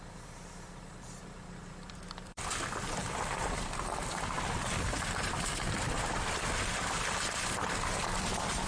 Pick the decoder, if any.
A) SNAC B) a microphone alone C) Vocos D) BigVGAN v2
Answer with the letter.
D